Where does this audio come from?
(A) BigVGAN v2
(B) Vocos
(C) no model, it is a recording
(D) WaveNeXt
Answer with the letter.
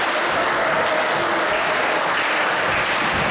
C